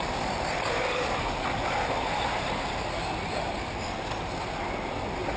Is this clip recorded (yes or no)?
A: yes